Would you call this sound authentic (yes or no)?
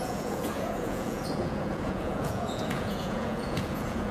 no